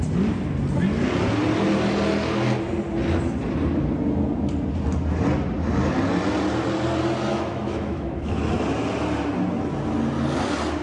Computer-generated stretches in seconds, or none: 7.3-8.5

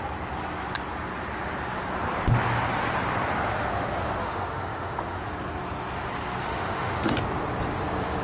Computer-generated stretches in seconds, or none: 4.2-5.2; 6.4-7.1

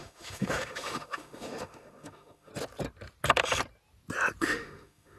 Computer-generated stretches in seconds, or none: 0.0-2.5; 4.4-5.2

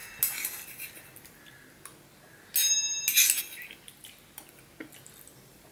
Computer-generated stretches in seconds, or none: none

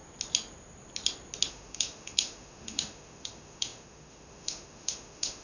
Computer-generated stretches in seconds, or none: 1.5-5.4